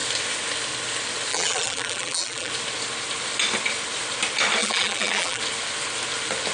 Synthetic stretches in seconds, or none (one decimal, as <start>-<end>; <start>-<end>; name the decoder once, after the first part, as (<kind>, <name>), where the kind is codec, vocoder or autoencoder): 1.3-2.5 (vocoder, BigVGAN v2); 4.6-5.4